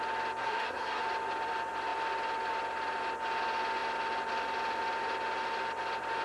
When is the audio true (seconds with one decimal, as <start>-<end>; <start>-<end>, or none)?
0.0-0.4; 1.0-6.2